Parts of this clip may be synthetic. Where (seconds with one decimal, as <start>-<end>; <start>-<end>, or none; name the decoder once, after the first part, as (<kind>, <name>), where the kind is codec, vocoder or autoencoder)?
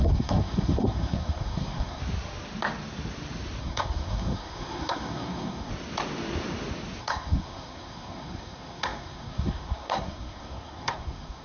0.0-2.0 (codec, SNAC); 3.6-5.7; 7.0-11.4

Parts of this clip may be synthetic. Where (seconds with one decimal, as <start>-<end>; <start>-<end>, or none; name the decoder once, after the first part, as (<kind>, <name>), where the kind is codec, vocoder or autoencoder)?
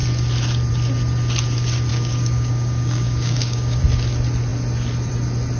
1.9-3.8 (codec, DAC)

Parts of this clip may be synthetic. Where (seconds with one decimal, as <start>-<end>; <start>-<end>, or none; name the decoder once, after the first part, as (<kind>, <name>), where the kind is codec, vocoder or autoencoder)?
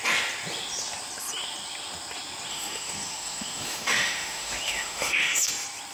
2.5-5.5 (autoencoder, DAC-VAE)